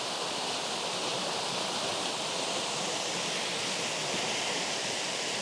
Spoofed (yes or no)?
no